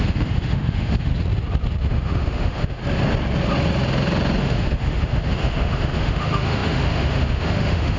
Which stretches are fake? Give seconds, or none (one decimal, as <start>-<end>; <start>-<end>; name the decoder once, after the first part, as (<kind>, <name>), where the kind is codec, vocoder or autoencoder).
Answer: 0.0-1.1 (autoencoder, DAC-VAE); 1.9-2.8; 4.4-8.0